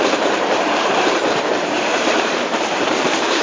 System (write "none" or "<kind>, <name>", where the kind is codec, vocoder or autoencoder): vocoder, BigVGAN v2